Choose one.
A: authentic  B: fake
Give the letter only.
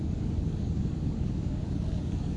B